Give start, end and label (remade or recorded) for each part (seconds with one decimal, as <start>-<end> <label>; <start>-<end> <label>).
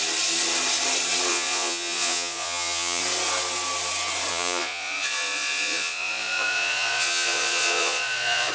0.0-1.3 recorded; 1.3-3.0 remade; 3.0-4.3 recorded; 4.3-8.5 remade